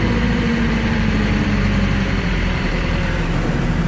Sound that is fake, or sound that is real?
fake